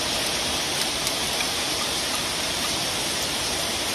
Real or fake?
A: fake